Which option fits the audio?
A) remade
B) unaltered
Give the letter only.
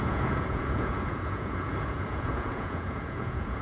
A